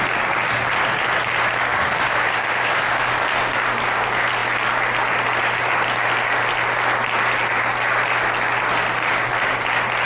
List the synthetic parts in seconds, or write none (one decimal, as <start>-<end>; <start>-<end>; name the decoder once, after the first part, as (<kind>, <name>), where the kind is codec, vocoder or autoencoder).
1.7-3.1 (codec, DAC)